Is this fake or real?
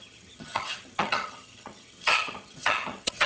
fake